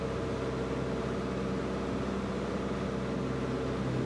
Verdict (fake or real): real